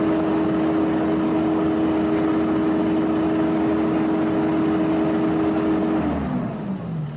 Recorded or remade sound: recorded